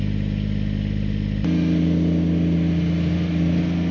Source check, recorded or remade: recorded